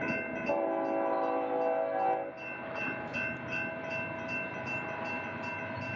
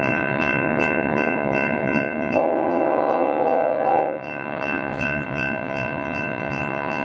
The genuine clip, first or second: first